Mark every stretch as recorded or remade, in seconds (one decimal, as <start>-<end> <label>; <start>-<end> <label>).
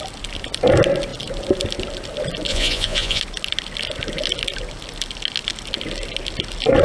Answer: 0.0-2.5 recorded; 2.5-3.2 remade; 3.2-6.8 recorded